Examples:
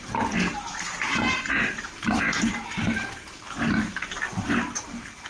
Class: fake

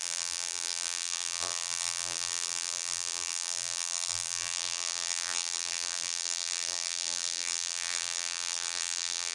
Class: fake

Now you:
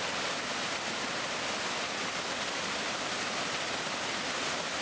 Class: fake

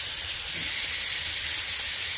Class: fake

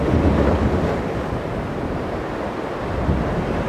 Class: real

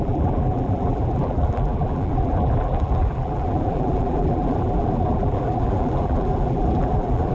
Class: fake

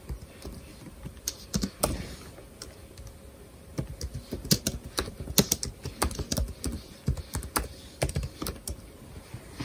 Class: real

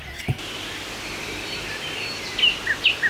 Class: real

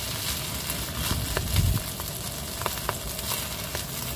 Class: real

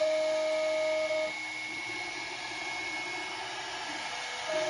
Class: real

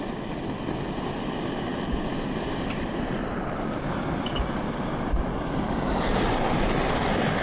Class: fake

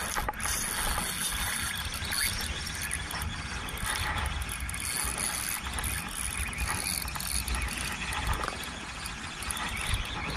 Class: real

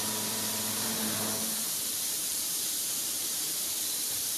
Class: fake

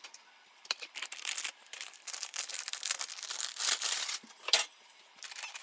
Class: fake